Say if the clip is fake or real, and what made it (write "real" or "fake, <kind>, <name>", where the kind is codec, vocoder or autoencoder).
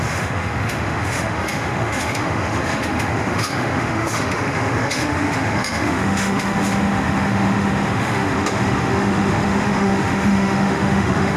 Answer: fake, autoencoder, DAC-VAE